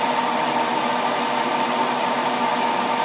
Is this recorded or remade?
recorded